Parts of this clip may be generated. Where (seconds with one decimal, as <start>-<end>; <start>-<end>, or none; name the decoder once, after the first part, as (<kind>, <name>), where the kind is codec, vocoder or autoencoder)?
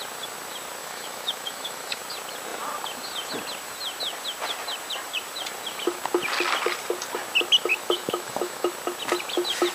0.8-2.0 (autoencoder, DAC-VAE); 7.7-8.7